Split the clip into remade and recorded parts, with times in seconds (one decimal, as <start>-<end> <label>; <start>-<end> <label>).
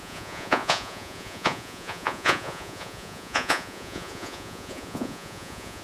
0.0-5.8 remade